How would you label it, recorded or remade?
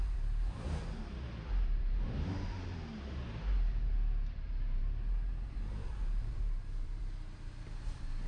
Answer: remade